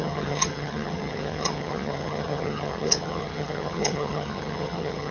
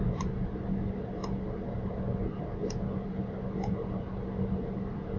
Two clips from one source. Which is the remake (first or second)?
first